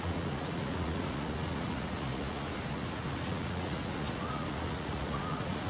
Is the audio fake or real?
fake